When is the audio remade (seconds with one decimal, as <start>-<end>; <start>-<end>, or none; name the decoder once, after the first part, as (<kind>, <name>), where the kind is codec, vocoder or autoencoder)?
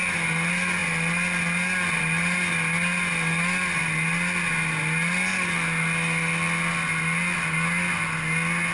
none